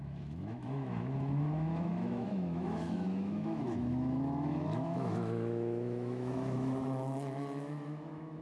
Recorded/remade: remade